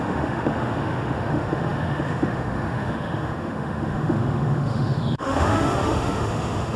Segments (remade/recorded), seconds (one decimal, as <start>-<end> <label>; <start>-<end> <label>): 0.0-6.8 remade